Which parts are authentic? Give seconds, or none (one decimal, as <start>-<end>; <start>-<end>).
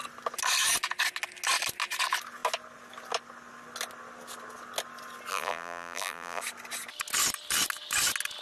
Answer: 0.0-5.3; 6.4-8.4